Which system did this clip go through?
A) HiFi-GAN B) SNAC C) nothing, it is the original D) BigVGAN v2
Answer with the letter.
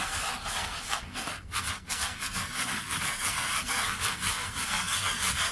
B